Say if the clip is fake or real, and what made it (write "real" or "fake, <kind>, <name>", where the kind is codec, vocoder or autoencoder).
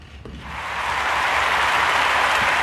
fake, vocoder, BigVGAN v2